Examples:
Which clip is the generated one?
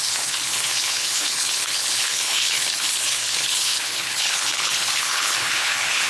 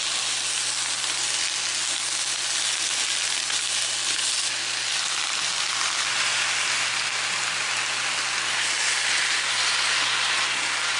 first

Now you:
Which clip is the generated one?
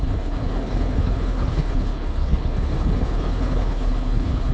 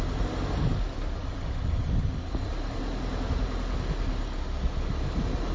first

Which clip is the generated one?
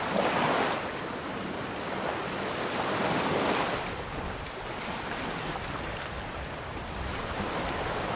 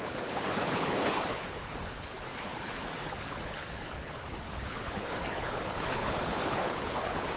second